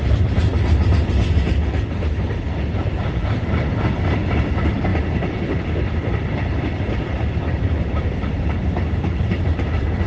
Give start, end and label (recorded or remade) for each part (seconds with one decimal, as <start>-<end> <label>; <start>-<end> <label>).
0.0-0.5 remade; 0.5-2.9 recorded; 2.9-10.1 remade